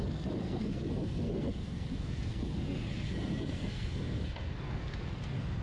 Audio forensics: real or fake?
fake